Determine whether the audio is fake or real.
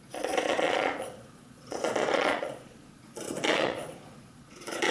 fake